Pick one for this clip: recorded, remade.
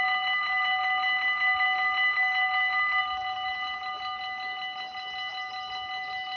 recorded